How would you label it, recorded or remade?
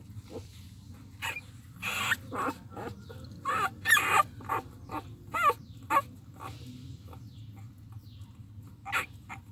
recorded